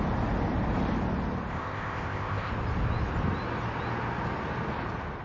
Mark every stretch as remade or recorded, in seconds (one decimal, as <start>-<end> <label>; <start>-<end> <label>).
0.0-1.5 recorded; 1.5-2.5 remade; 2.5-5.2 recorded